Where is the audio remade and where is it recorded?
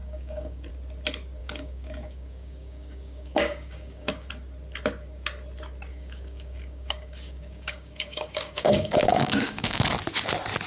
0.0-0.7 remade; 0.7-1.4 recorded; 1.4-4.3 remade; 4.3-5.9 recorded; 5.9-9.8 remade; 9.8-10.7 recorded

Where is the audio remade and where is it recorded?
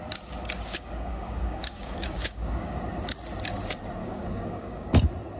0.0-0.7 recorded; 0.7-2.8 remade; 2.8-4.0 recorded; 4.0-5.0 remade; 5.0-5.4 recorded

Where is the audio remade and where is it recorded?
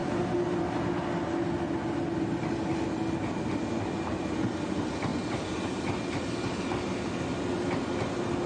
0.0-8.5 recorded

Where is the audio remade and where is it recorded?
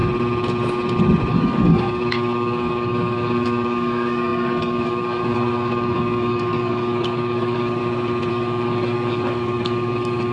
0.0-1.3 recorded; 1.3-7.8 remade; 7.8-8.3 recorded; 8.3-10.3 remade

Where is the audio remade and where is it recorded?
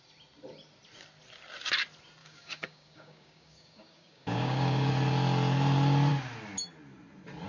0.0-2.2 recorded; 2.2-4.9 remade; 4.9-7.5 recorded